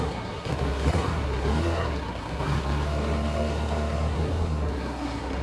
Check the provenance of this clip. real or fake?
fake